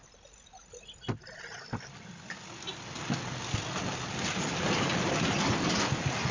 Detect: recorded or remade recorded